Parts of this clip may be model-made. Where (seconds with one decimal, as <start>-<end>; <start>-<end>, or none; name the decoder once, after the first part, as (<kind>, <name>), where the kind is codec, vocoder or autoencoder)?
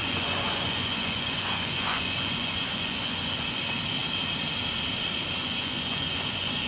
0.0-3.6 (vocoder, Vocos); 5.4-6.7